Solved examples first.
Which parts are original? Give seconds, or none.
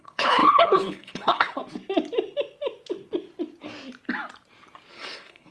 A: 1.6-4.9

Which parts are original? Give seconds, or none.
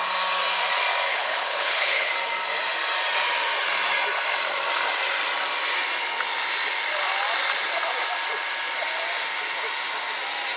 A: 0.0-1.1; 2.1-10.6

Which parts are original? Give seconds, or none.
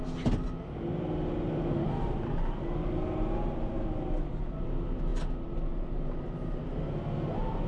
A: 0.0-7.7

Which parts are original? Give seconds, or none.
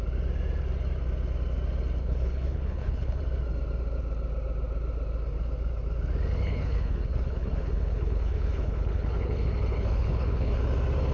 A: 0.0-2.0; 3.2-6.4; 10.6-11.1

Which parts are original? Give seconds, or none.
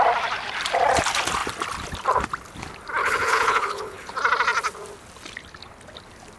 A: 0.0-3.0; 4.1-6.4